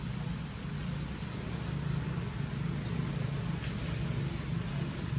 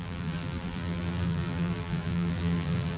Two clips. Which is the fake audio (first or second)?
second